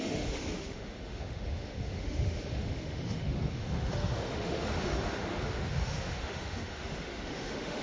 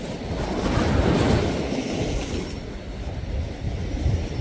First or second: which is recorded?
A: second